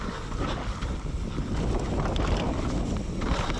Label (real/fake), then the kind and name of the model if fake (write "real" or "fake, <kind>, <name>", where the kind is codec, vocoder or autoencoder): real